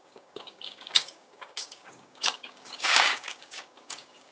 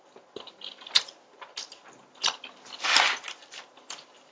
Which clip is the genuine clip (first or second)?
second